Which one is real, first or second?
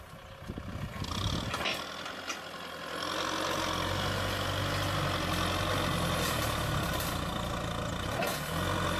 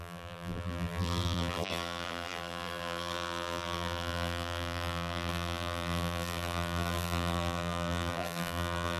first